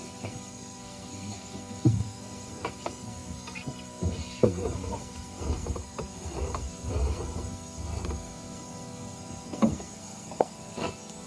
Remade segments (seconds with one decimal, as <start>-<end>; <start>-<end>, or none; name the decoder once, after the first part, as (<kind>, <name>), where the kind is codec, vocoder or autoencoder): 0.0-11.3 (codec, SNAC)